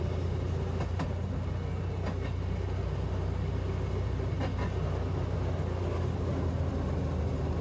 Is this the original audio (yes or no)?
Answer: yes